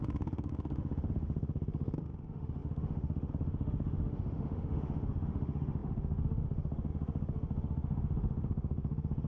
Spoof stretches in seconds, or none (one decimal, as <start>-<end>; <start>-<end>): 0.0-9.3